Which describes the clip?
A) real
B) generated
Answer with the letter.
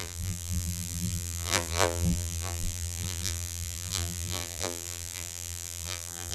B